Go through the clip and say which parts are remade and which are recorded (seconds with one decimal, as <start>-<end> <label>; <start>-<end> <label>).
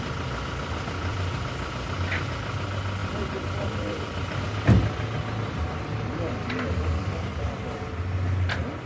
0.0-1.1 recorded; 1.1-1.7 remade; 1.7-3.0 recorded; 3.0-4.4 remade; 4.4-7.3 recorded; 7.3-7.8 remade; 7.8-8.9 recorded